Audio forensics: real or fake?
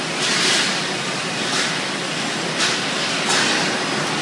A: real